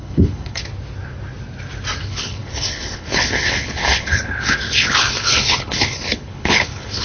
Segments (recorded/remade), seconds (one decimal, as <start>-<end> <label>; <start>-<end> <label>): 0.0-0.6 remade; 0.6-2.0 recorded; 2.0-7.0 remade